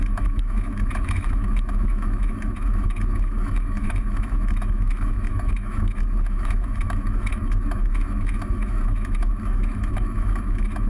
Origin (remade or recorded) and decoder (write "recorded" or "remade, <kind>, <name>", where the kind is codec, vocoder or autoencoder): remade, autoencoder, DAC-VAE